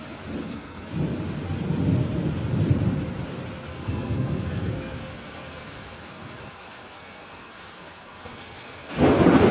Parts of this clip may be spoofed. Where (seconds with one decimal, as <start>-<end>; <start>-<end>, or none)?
0.4-0.9; 3.7-8.9